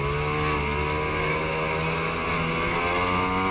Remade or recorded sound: recorded